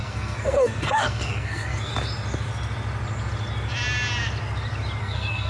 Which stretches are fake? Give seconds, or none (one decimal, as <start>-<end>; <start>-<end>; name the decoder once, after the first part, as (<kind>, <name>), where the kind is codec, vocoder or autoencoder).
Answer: 0.0-1.9 (codec, SNAC); 5.0-5.5